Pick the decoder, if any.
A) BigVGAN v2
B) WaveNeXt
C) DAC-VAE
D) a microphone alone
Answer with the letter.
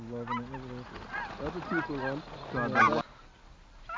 D